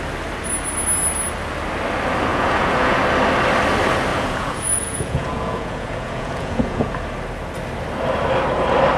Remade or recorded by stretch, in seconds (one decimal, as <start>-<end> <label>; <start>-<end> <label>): 0.0-2.3 recorded; 2.3-3.0 remade; 3.0-4.1 recorded; 4.1-6.9 remade; 6.9-9.0 recorded